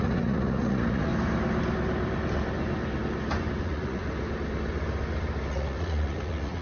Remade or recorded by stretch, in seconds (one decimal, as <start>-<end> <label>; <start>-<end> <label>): 0.0-1.1 remade; 1.1-3.6 recorded; 3.6-4.0 remade; 4.0-5.5 recorded; 5.5-6.6 remade

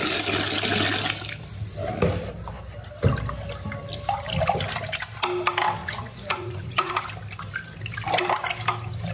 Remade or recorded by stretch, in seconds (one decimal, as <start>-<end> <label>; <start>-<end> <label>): 0.0-5.8 recorded; 5.8-6.9 remade; 6.9-9.1 recorded